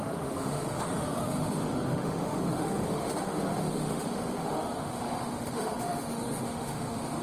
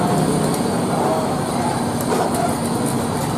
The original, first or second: second